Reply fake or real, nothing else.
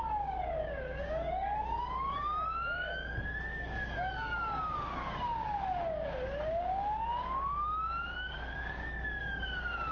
fake